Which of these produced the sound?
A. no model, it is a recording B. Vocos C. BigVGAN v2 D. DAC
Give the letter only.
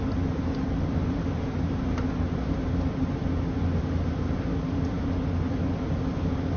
A